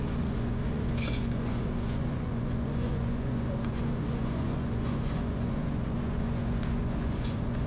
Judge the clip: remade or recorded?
remade